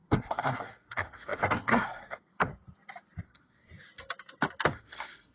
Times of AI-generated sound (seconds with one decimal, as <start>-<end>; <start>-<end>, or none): 0.0-2.5; 3.2-3.7; 4.7-5.3